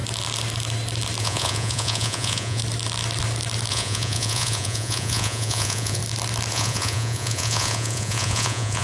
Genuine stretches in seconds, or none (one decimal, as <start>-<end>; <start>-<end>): 0.0-1.2; 2.6-3.7; 6.0-6.5